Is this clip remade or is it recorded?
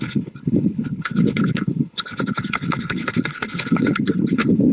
remade